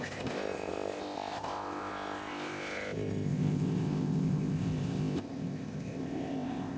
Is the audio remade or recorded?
remade